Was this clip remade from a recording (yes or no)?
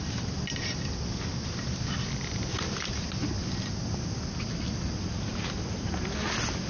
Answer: no